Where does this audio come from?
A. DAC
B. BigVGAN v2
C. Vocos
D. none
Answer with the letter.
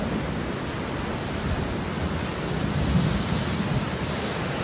D